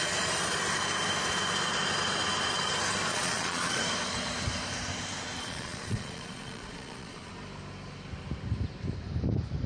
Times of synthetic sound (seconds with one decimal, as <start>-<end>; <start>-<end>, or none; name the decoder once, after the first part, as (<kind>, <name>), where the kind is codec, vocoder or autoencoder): 3.1-3.8 (vocoder, Vocos); 5.4-7.3